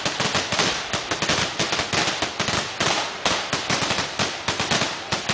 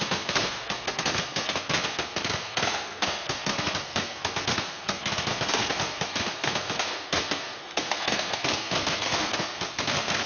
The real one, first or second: first